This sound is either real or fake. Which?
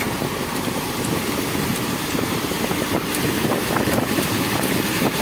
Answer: fake